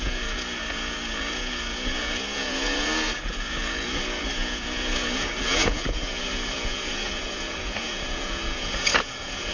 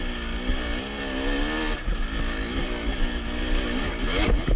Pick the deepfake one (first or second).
first